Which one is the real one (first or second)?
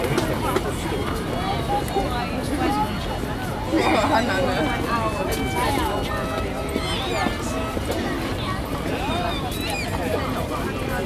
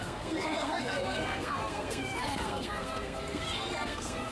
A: first